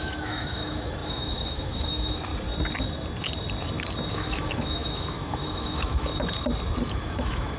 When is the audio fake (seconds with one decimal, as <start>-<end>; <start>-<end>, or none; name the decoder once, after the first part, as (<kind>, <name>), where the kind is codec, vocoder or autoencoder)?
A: 0.0-2.3 (autoencoder, DAC-VAE); 4.1-6.1; 6.9-7.6